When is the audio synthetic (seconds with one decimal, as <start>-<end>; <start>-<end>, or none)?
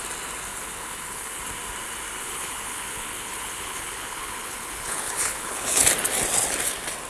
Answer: 0.5-1.4; 2.2-5.8